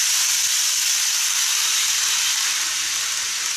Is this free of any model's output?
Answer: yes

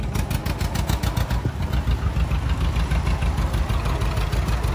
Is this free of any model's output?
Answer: yes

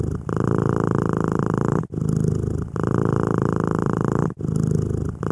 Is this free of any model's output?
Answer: yes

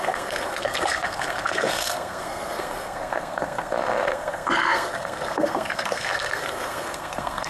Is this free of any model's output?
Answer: no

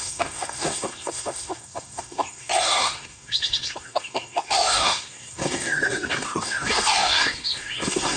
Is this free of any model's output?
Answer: no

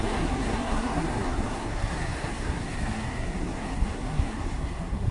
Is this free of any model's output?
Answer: no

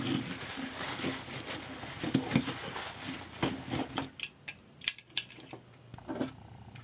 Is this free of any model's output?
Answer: yes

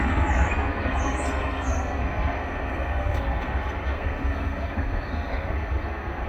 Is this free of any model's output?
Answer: no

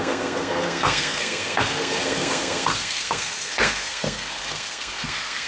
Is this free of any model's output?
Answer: no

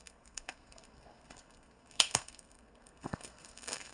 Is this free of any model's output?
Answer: no